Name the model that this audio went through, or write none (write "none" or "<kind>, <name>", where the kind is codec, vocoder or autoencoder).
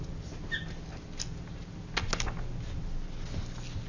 none